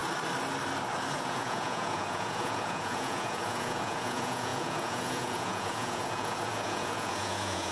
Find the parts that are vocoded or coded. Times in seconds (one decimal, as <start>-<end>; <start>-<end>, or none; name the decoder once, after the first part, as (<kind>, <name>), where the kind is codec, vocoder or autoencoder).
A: 1.1-7.7 (vocoder, Vocos)

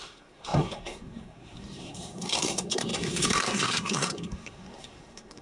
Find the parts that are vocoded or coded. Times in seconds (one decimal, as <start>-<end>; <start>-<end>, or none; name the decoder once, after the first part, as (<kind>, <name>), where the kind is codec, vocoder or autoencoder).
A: 0.0-5.4 (codec, SNAC)

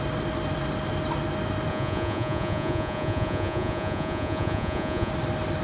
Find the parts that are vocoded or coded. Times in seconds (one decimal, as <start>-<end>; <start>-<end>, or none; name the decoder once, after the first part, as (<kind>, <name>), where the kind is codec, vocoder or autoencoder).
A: 1.7-5.1 (vocoder, Vocos)

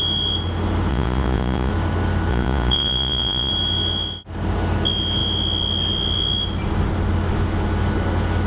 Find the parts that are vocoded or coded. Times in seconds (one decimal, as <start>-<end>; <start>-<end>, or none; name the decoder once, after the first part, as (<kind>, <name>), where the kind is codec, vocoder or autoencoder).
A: 0.9-1.7 (vocoder, Vocos); 2.3-3.5